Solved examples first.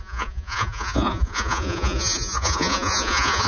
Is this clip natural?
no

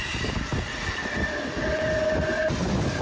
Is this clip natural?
yes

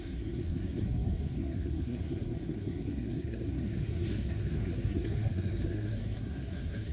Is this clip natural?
no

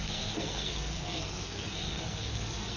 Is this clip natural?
no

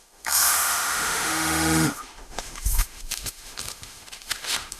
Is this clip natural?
no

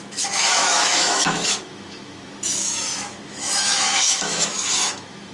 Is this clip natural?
no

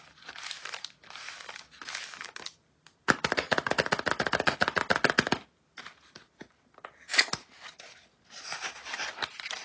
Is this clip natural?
yes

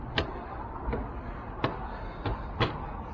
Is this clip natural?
yes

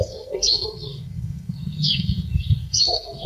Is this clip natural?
no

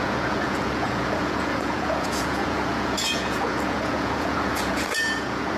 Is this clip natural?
no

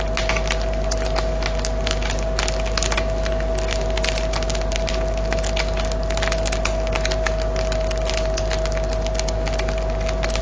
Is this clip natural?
yes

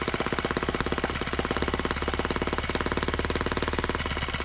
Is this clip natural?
yes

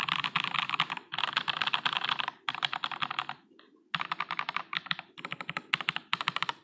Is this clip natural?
yes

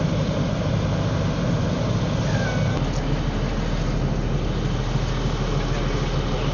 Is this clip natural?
yes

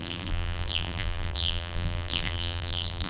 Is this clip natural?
no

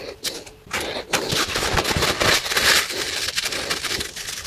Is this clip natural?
yes